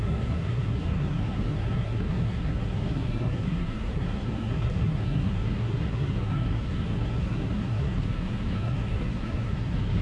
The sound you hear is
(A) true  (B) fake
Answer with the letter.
B